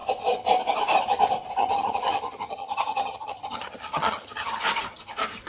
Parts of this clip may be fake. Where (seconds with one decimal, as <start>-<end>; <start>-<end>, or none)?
1.6-4.5

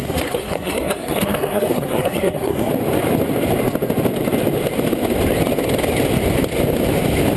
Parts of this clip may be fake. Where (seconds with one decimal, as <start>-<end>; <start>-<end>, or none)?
0.0-2.7